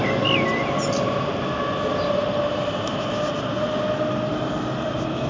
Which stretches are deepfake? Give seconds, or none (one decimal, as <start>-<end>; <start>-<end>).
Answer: none